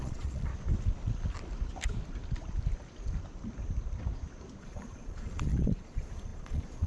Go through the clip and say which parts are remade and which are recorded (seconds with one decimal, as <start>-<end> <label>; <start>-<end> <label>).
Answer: 0.0-0.5 remade; 0.5-4.6 recorded; 4.6-6.9 remade